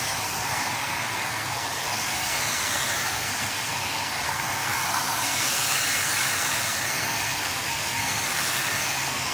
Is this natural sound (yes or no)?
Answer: no